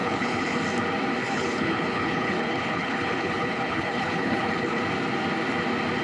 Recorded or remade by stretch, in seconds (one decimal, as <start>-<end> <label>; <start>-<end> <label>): 0.0-0.6 remade; 0.6-1.2 recorded; 1.2-4.8 remade; 4.8-6.0 recorded

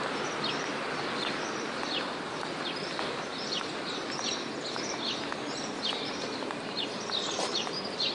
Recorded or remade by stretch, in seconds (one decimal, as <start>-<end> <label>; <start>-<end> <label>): 0.0-8.1 recorded

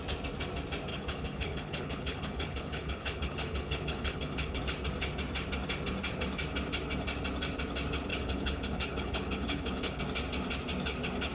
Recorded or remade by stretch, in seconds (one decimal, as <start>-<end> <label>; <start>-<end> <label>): 0.0-0.9 recorded; 0.9-4.6 remade; 4.6-8.1 recorded; 8.1-10.0 remade; 10.0-11.3 recorded